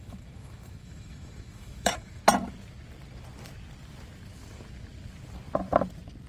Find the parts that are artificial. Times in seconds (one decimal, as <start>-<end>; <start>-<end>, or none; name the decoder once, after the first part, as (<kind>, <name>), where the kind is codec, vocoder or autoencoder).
0.0-2.2 (autoencoder, DAC-VAE)